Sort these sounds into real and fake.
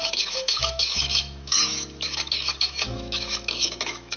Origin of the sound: fake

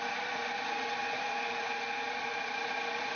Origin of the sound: real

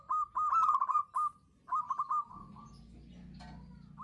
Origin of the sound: real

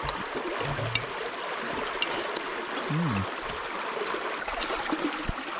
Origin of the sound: real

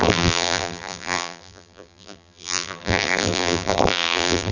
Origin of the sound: fake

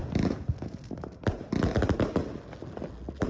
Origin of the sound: real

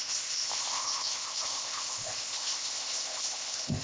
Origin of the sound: fake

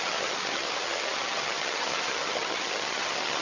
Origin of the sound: fake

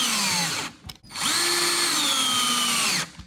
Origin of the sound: real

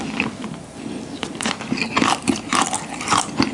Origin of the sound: fake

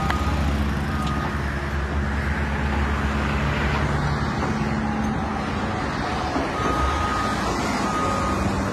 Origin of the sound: real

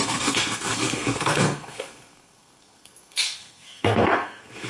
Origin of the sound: fake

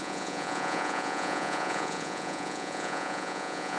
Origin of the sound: fake